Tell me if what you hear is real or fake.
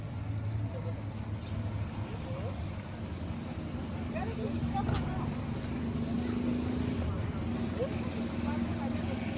real